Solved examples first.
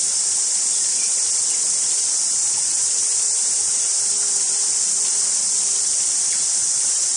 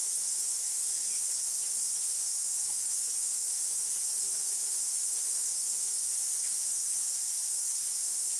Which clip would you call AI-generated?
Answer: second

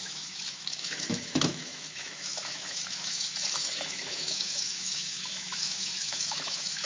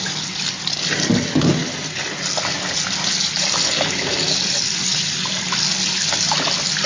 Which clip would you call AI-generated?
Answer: first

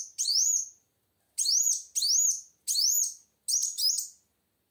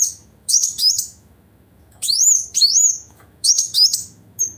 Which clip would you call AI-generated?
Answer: second